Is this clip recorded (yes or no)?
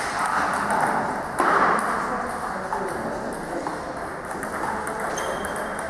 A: yes